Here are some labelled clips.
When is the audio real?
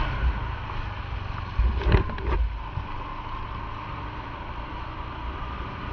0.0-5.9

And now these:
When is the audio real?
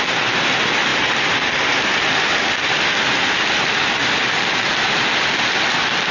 0.0-6.1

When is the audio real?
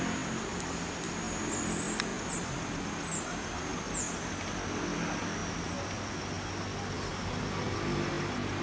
0.0-8.6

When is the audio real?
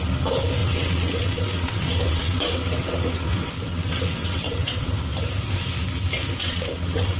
0.0-0.6; 4.9-6.4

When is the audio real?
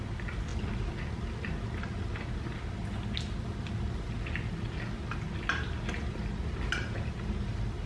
0.0-7.9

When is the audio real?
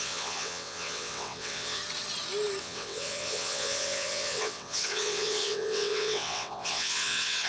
1.8-2.6